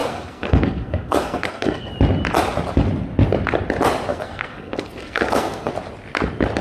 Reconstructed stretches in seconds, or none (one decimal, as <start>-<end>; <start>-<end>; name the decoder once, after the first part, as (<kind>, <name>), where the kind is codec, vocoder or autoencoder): 0.0-1.9 (codec, SNAC); 4.1-5.7